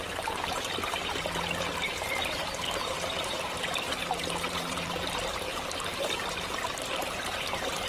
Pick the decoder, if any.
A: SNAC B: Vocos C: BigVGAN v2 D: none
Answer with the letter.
C